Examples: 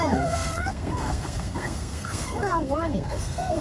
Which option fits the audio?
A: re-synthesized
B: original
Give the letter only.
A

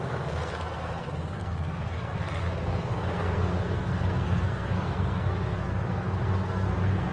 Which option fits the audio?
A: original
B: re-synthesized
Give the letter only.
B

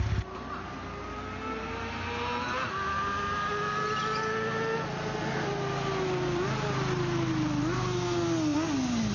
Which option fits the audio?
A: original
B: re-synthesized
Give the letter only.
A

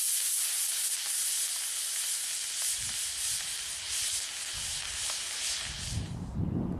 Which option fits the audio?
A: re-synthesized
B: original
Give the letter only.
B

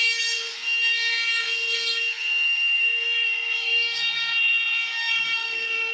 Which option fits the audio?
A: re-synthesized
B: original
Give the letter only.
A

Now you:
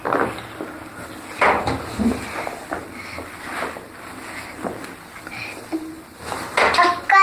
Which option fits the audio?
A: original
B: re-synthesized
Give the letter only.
A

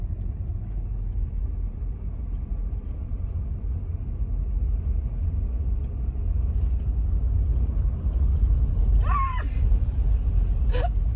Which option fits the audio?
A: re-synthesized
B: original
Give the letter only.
B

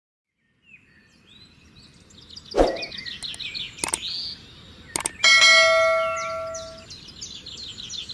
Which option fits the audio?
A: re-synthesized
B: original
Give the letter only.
B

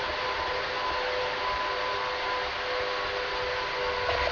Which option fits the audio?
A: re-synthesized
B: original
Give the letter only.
B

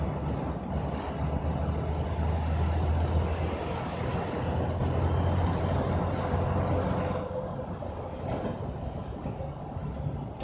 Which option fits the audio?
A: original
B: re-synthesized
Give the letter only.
A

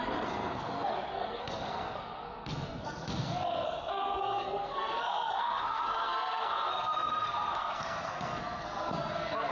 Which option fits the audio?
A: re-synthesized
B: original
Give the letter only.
A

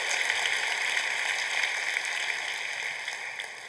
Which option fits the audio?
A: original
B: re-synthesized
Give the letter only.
A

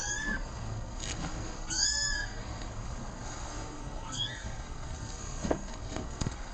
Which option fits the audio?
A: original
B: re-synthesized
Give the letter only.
B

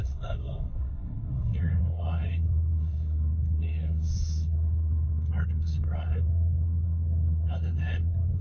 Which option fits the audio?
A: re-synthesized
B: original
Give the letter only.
A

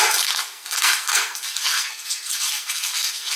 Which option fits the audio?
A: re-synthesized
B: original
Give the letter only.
A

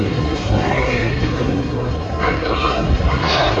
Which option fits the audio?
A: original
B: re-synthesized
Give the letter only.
B